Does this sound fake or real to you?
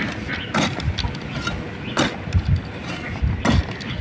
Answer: real